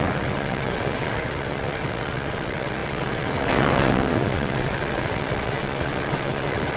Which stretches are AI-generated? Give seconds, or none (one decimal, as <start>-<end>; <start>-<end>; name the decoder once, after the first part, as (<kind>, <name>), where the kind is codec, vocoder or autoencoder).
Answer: 0.0-6.8 (vocoder, WaveNeXt)